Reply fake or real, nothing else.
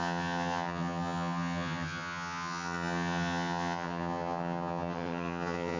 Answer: fake